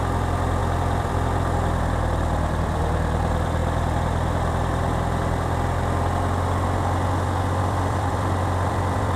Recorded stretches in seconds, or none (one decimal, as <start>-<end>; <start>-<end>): 3.6-7.6